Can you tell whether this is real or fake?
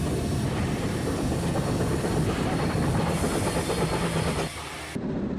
real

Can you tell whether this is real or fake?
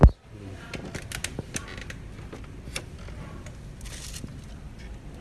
real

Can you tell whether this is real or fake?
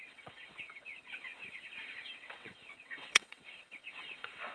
fake